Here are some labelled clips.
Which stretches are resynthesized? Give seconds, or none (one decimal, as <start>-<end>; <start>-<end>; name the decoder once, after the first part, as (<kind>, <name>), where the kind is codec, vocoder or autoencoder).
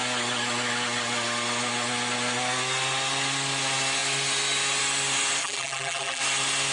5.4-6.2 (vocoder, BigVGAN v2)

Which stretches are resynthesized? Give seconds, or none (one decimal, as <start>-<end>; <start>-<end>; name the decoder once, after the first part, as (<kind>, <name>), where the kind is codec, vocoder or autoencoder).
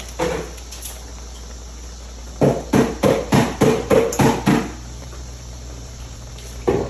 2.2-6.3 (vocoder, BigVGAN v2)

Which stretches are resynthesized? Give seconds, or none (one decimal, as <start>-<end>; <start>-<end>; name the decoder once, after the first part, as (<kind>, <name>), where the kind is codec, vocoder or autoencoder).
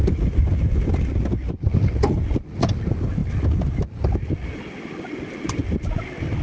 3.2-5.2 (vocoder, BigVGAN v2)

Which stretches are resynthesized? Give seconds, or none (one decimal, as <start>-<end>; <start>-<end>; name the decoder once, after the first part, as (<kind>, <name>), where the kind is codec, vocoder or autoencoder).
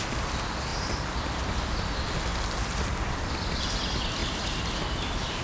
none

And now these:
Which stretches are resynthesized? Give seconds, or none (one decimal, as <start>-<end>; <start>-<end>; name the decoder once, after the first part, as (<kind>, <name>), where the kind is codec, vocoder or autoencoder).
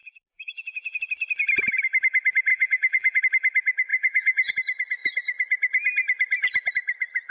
0.0-1.0 (vocoder, BigVGAN v2); 2.5-3.2; 3.9-4.5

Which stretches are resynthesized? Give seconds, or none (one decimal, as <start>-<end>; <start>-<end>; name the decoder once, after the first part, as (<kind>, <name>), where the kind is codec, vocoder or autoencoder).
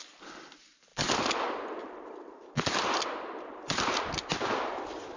none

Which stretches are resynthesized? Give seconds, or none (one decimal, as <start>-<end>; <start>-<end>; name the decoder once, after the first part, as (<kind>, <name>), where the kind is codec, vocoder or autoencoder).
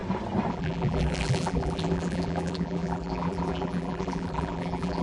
0.5-5.0 (vocoder, BigVGAN v2)